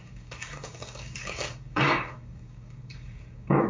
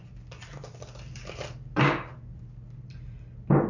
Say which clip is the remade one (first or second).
first